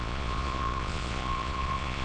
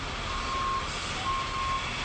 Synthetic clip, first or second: first